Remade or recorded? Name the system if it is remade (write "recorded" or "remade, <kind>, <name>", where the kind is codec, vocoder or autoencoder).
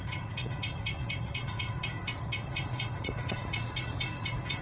remade, vocoder, Vocos